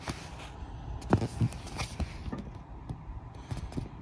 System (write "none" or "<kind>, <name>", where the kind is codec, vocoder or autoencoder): none